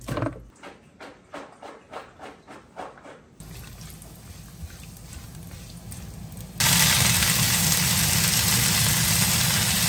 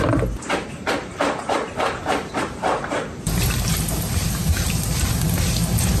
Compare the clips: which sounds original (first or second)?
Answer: first